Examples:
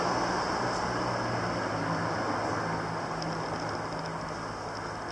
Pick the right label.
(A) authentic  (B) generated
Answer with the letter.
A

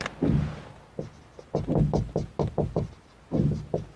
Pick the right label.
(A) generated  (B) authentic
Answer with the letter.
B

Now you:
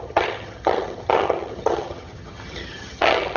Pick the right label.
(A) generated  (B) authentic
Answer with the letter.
A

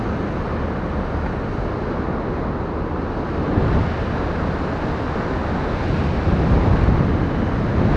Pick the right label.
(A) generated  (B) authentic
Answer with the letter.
B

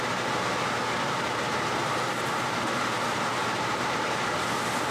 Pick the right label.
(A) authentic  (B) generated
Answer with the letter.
A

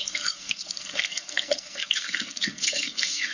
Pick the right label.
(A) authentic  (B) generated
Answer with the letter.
B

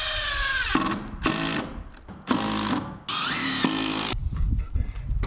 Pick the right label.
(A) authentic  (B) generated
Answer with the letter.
A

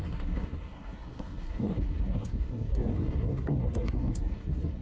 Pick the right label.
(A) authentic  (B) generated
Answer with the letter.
B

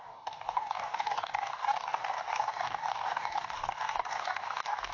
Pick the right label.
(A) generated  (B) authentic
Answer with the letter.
A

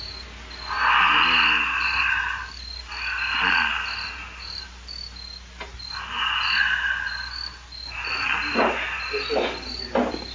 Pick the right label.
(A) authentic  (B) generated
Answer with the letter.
A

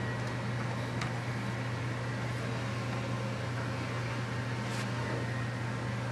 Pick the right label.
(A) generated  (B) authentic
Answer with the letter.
B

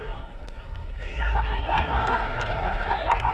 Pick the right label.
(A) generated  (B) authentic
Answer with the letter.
A